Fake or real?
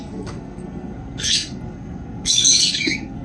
fake